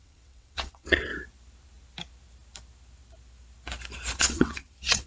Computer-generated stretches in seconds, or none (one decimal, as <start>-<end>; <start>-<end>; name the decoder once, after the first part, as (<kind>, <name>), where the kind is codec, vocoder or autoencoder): 0.0-1.1 (vocoder, WaveNeXt); 4.2-5.1